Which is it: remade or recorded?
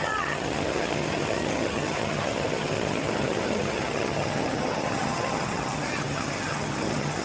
remade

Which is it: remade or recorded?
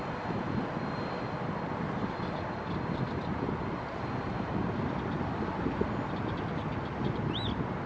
recorded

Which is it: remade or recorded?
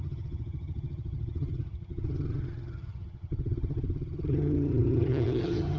remade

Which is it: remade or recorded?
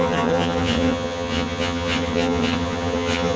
remade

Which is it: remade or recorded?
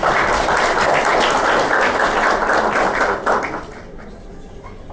recorded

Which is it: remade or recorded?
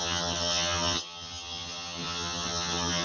remade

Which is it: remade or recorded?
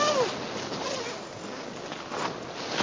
recorded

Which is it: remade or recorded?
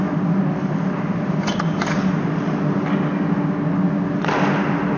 recorded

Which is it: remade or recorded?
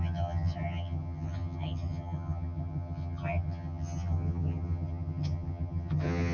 remade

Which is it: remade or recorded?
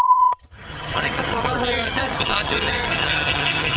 remade